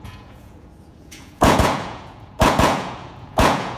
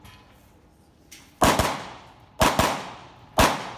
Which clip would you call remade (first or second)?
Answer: first